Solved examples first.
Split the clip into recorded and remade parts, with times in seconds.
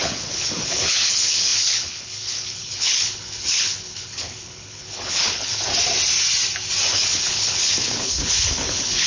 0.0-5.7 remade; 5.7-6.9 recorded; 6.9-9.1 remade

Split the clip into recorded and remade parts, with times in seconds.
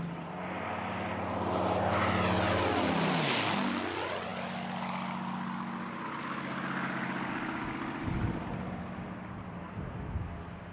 0.0-10.7 recorded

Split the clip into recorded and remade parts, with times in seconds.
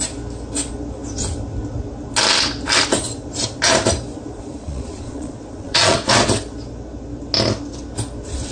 0.0-4.3 recorded; 4.3-6.1 remade; 6.1-8.5 recorded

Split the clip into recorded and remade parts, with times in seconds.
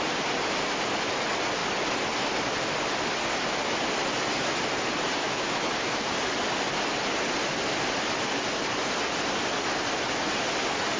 0.0-5.2 recorded; 5.2-6.1 remade; 6.1-11.0 recorded